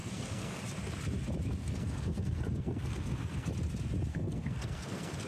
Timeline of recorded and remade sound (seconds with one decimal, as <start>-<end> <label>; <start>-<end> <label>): 0.0-0.6 remade; 0.6-1.6 recorded; 1.6-3.5 remade; 3.5-4.1 recorded; 4.1-5.3 remade